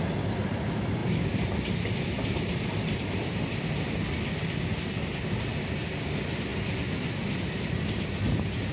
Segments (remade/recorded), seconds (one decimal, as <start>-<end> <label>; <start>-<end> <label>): 0.0-8.7 recorded